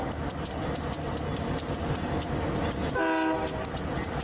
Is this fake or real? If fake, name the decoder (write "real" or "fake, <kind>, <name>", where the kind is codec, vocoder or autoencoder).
real